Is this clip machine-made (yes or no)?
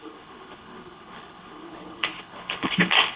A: yes